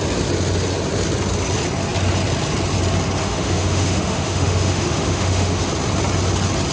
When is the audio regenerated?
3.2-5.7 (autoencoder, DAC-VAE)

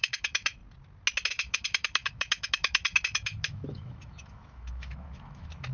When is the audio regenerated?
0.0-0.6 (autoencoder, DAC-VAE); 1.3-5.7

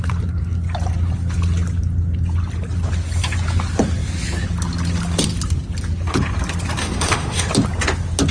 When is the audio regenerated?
6.8-7.5 (autoencoder, DAC-VAE)